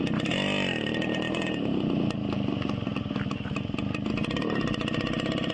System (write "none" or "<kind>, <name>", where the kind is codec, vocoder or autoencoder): none